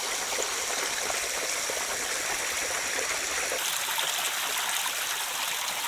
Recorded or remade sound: recorded